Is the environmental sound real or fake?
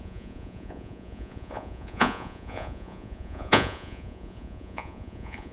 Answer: fake